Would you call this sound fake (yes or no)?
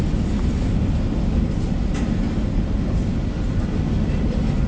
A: no